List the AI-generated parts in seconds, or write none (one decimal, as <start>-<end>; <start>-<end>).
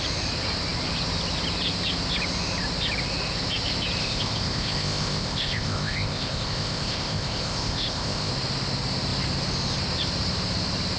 4.0-8.3